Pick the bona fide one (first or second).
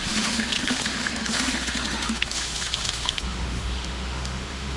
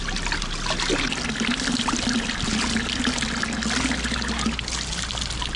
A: second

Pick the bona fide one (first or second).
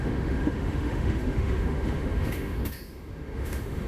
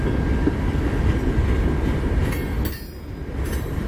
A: second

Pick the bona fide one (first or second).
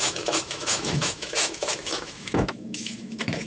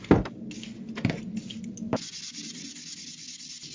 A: second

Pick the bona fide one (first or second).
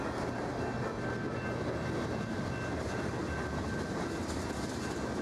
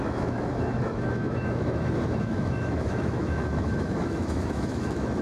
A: first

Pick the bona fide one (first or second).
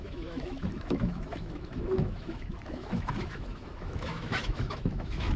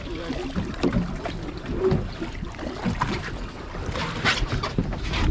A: second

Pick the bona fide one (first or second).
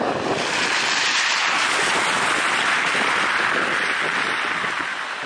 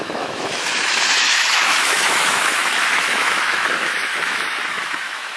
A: first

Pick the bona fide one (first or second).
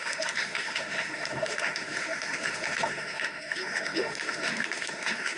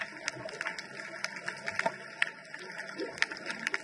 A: second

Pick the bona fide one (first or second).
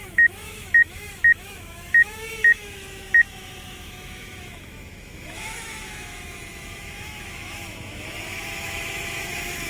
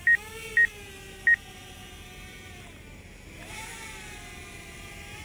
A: second